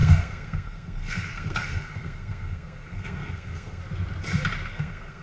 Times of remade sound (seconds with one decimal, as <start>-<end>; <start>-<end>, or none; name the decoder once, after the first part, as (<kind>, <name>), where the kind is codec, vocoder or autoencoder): 0.0-3.8 (codec, SNAC); 4.7-5.2